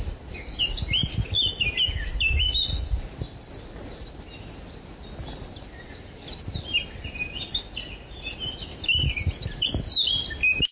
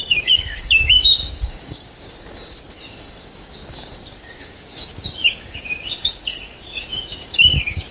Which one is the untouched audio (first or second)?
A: first